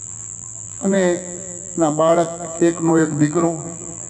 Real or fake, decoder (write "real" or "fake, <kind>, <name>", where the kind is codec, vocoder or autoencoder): fake, vocoder, BigVGAN v2